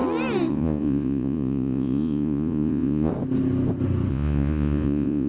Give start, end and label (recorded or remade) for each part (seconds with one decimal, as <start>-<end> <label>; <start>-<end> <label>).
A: 0.0-0.5 recorded; 0.5-3.1 remade; 3.1-4.1 recorded; 4.1-5.3 remade